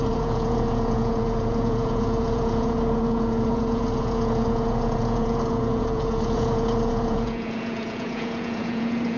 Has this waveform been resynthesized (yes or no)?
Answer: yes